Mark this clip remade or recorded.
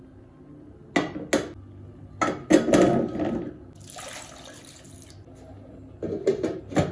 recorded